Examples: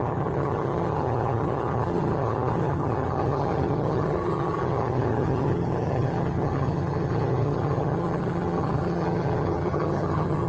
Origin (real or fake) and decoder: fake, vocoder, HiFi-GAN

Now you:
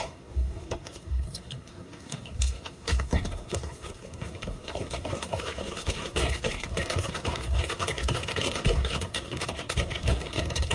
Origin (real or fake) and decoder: fake, codec, SNAC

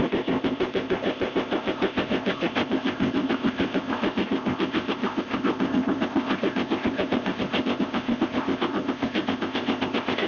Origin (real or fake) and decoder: fake, codec, ZipCodec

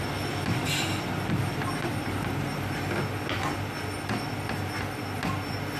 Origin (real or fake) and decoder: real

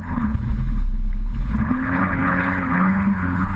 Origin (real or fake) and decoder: fake, codec, HILCodec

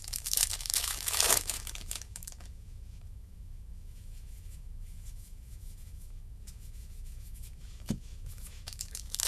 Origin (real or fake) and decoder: fake, autoencoder, DAC-VAE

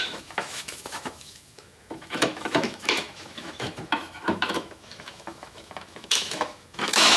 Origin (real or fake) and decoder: fake, autoencoder, DAC-VAE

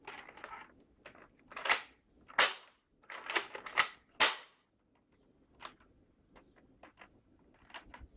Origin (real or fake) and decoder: real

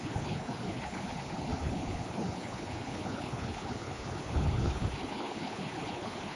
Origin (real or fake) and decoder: fake, codec, HILCodec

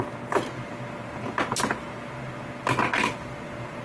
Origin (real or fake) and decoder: real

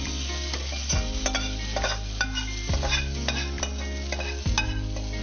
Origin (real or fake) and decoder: real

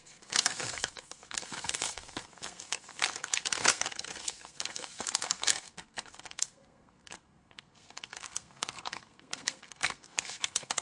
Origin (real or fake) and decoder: fake, codec, SNAC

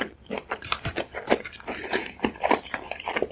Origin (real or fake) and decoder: fake, vocoder, BigVGAN v2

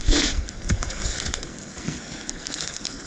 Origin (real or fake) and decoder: fake, codec, SNAC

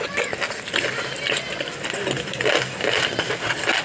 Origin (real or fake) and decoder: real